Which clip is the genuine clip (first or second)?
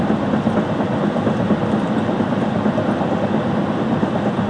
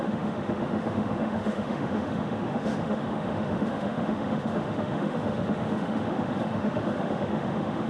first